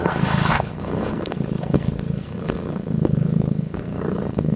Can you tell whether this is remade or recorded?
remade